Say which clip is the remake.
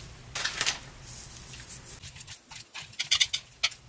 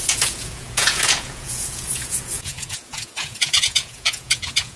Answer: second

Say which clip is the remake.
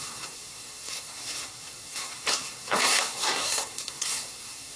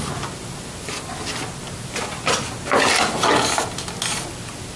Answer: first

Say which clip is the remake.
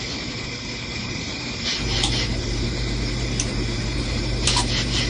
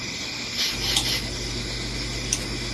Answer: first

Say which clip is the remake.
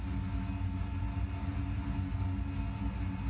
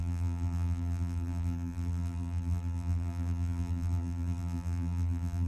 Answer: second